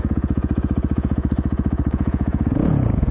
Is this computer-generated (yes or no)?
yes